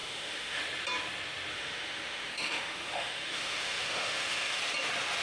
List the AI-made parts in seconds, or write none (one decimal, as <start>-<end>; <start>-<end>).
0.0-0.6; 1.5-4.6